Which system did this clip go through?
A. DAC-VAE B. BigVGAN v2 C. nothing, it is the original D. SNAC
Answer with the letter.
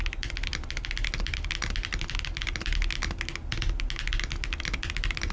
C